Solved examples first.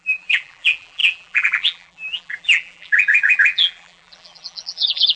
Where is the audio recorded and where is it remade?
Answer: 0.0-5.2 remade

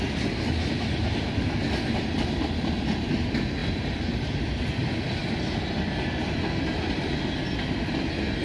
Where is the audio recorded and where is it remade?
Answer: 0.0-8.4 recorded

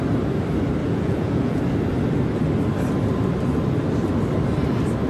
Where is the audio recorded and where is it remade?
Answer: 0.0-0.8 recorded; 0.8-1.6 remade; 1.6-5.1 recorded

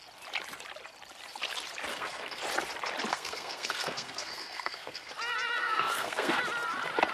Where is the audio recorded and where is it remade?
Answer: 0.0-1.9 recorded; 1.9-2.4 remade; 2.4-3.1 recorded; 3.1-5.1 remade; 5.1-5.6 recorded; 5.6-6.4 remade; 6.4-7.1 recorded

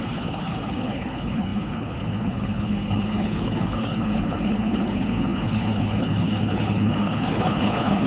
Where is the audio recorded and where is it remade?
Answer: 0.0-8.1 remade